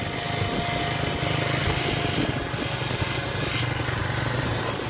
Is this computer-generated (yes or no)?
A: no